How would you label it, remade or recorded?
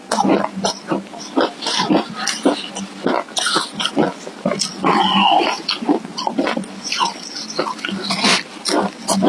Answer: recorded